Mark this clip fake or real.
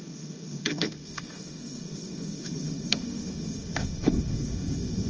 fake